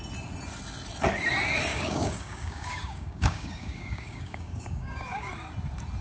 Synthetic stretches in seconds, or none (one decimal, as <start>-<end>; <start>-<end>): 1.7-5.3